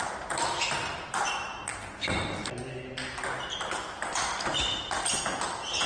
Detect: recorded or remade recorded